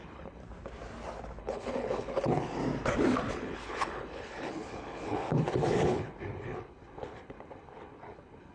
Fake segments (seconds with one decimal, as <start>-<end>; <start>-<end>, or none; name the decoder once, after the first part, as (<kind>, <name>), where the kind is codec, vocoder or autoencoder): 0.0-0.4 (codec, HILCodec); 1.4-2.6; 3.3-8.5